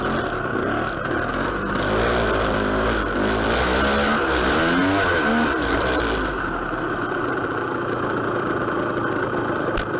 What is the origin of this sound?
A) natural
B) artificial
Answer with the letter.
A